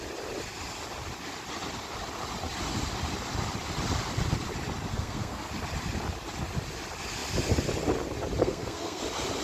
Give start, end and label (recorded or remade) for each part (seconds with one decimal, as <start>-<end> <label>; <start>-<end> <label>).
0.0-4.9 recorded; 4.9-5.5 remade; 5.5-8.4 recorded; 8.4-9.0 remade; 9.0-9.4 recorded